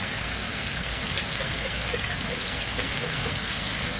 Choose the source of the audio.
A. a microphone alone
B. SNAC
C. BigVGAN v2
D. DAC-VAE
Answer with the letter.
B